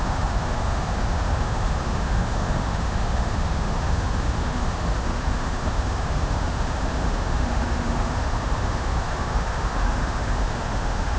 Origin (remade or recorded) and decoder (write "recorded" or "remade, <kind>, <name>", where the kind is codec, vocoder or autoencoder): remade, autoencoder, DAC-VAE